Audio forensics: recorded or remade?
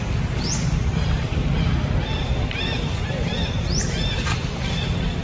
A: recorded